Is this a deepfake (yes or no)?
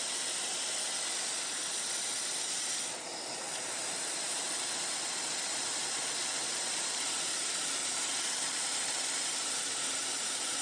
no